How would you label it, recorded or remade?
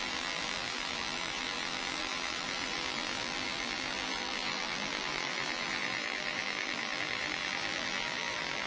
remade